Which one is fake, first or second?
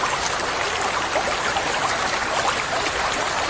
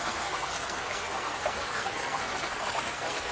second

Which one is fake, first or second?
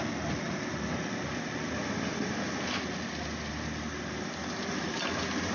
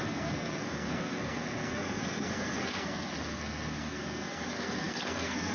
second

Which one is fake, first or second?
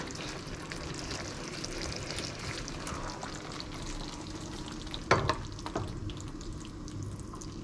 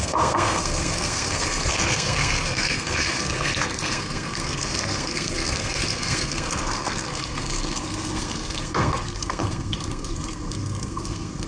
second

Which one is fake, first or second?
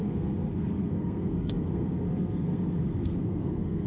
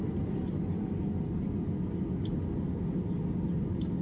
first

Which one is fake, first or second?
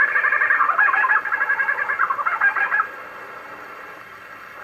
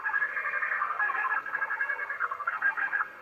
second